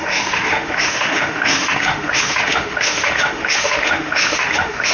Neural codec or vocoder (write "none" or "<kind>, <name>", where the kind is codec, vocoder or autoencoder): autoencoder, DAC-VAE